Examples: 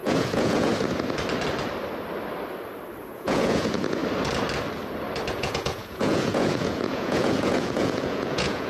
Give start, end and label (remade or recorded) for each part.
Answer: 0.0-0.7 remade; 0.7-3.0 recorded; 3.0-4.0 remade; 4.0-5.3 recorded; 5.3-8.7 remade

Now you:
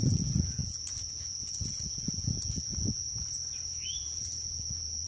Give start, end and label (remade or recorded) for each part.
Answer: 0.0-3.0 remade; 3.0-4.0 recorded; 4.0-5.1 remade

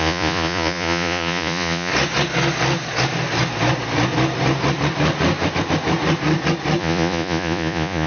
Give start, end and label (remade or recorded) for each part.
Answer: 0.0-1.9 remade; 1.9-6.8 recorded; 6.8-8.1 remade

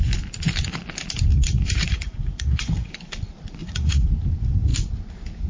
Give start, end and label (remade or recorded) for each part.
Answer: 0.0-1.3 recorded; 1.3-2.9 remade; 2.9-3.6 recorded; 3.6-4.1 remade; 4.1-5.5 recorded